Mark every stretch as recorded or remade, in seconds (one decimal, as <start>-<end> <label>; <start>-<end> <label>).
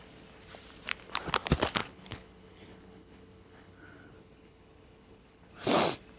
0.0-1.8 recorded; 1.8-5.5 remade; 5.5-6.2 recorded